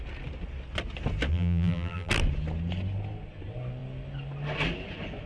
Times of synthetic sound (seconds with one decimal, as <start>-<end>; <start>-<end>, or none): 1.3-2.1